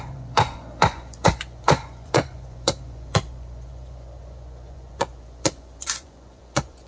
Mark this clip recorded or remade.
remade